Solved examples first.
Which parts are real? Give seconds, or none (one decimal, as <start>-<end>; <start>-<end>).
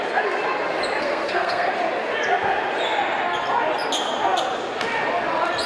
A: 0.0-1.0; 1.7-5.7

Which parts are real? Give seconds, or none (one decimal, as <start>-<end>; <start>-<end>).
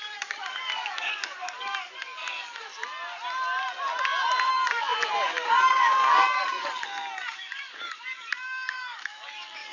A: 2.7-4.5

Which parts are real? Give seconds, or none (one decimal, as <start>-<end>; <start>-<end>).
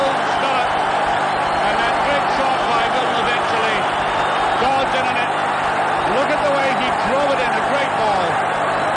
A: 0.0-9.0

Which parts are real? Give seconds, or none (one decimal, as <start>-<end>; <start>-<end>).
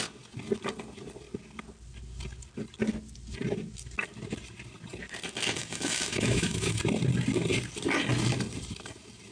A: 0.0-5.6; 6.8-9.3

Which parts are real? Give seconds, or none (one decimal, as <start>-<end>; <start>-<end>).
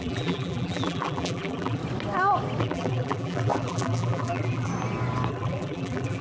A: 1.8-2.6; 4.7-5.3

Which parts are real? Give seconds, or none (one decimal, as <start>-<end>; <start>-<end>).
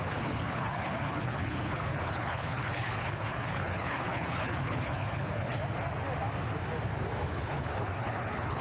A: 5.6-7.3